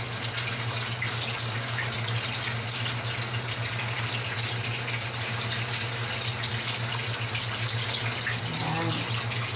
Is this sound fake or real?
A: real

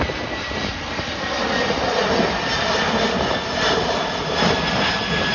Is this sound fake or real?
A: real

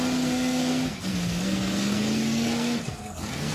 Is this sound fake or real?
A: fake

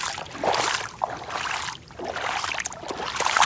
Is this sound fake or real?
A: real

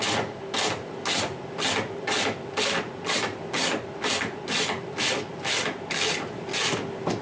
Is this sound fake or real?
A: real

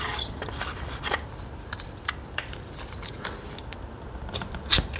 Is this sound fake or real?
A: fake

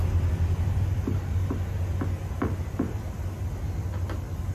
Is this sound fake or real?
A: real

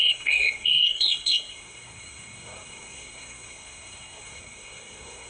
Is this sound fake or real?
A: fake